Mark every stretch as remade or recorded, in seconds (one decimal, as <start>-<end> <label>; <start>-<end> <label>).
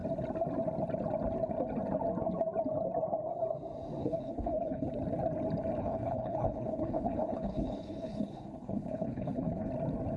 0.0-4.0 recorded; 4.0-4.9 remade; 4.9-5.8 recorded; 5.8-9.7 remade; 9.7-10.2 recorded